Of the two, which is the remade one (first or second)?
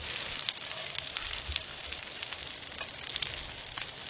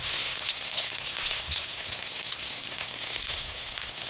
second